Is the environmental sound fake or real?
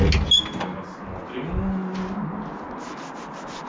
real